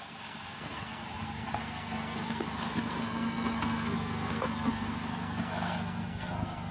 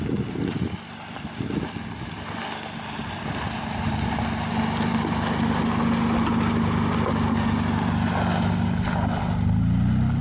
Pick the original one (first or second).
second